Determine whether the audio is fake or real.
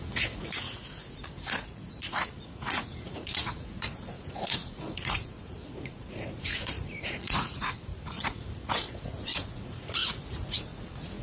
fake